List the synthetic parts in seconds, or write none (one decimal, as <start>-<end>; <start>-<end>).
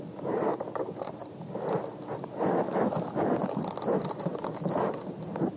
0.5-1.3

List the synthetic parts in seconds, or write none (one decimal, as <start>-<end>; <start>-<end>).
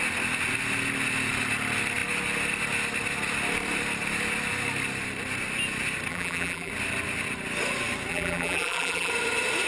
6.1-6.7; 8.1-9.1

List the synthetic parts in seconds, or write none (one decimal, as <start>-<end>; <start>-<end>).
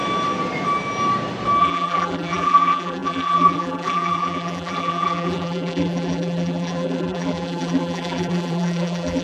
1.6-9.2